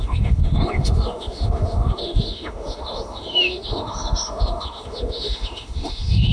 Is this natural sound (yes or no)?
no